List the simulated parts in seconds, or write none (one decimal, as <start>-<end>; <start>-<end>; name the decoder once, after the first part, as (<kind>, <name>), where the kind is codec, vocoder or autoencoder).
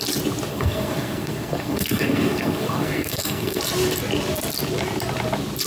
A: 0.5-3.6 (codec, SNAC)